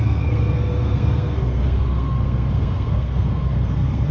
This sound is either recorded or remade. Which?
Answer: remade